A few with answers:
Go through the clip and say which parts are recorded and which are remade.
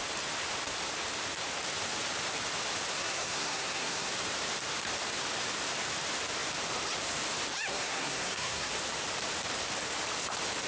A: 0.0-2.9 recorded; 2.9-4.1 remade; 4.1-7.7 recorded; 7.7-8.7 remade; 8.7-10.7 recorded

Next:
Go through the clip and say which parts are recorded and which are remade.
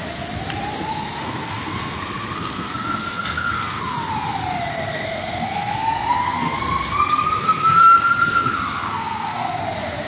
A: 0.0-0.9 recorded; 0.9-3.8 remade; 3.8-4.7 recorded; 4.7-9.6 remade; 9.6-10.1 recorded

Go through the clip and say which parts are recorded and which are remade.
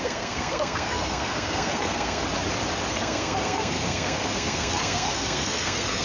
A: 0.0-2.2 remade; 2.2-2.9 recorded; 2.9-6.0 remade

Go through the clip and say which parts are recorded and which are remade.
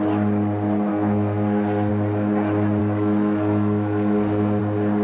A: 0.0-0.9 recorded; 0.9-1.9 remade; 1.9-2.8 recorded; 2.8-4.6 remade; 4.6-5.0 recorded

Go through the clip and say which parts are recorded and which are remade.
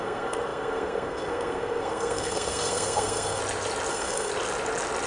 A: 0.0-3.4 remade; 3.4-3.9 recorded; 3.9-4.3 remade; 4.3-5.1 recorded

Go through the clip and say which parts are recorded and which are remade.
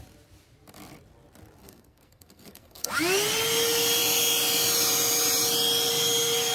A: 0.0-1.6 recorded; 1.6-2.9 remade; 2.9-6.5 recorded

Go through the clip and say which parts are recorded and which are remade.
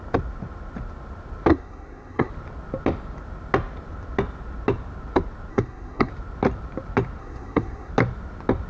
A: 0.0-1.5 recorded; 1.5-2.3 remade; 2.3-5.5 recorded; 5.5-6.1 remade; 6.1-7.2 recorded; 7.2-7.9 remade; 7.9-8.7 recorded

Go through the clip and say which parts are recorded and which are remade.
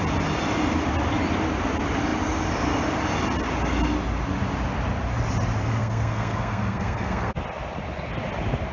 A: 0.0-5.6 recorded; 5.6-7.3 remade; 7.3-8.7 recorded